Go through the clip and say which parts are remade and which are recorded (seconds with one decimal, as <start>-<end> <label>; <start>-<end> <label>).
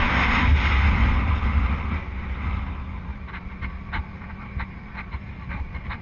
0.0-1.0 remade; 1.0-1.9 recorded; 1.9-6.0 remade